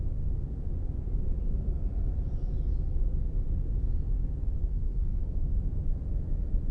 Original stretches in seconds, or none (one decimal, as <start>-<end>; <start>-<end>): 0.0-4.6; 5.5-6.7